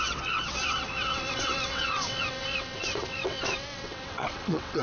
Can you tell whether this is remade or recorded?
remade